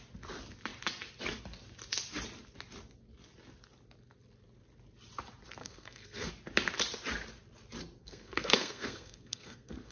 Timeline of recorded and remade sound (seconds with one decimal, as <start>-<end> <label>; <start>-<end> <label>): 0.0-5.6 recorded; 5.6-6.3 remade; 6.3-8.0 recorded; 8.0-9.9 remade